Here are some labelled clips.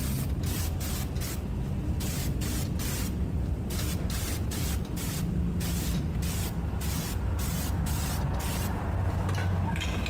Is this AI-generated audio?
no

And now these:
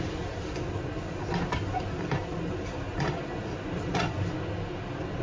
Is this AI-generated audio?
no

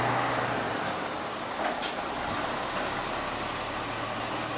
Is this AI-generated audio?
no